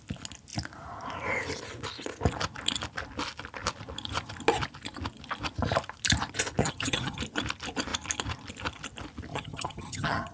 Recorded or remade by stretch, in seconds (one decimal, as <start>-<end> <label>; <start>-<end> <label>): 0.0-6.6 recorded; 6.6-7.2 remade; 7.2-9.3 recorded; 9.3-10.3 remade